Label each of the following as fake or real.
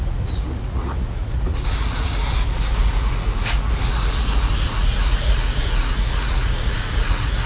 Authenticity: fake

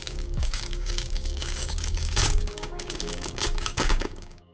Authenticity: fake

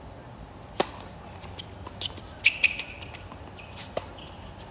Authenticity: fake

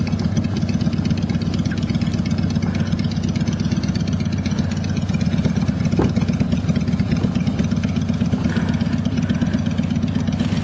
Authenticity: real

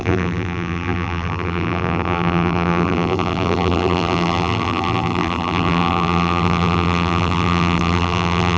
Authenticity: fake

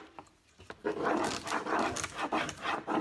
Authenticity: real